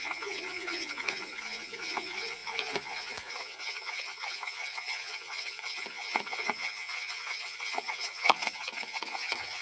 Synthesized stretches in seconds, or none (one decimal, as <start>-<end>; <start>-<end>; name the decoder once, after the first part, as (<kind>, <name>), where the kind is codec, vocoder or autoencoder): 0.0-9.6 (vocoder, Vocos)